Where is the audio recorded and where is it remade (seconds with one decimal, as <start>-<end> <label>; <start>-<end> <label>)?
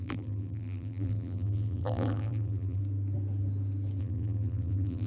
0.0-2.8 remade; 2.8-4.0 recorded; 4.0-5.1 remade